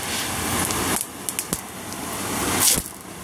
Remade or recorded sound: recorded